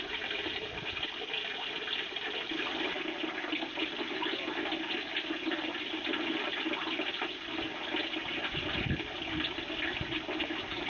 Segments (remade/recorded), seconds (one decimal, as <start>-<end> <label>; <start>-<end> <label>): 0.0-10.9 recorded